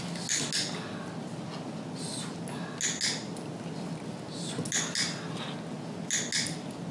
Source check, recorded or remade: recorded